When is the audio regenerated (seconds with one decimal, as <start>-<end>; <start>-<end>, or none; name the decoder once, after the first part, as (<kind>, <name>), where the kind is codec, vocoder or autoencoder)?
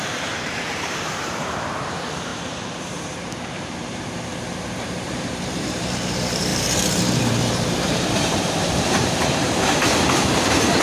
0.0-10.8 (vocoder, BigVGAN v2)